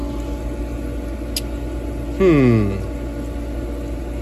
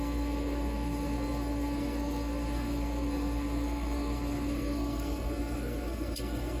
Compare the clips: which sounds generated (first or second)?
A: second